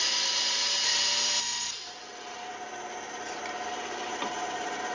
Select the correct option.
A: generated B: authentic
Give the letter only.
B